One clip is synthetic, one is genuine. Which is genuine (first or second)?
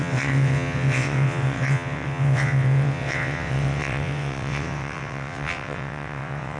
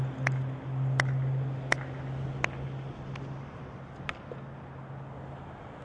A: second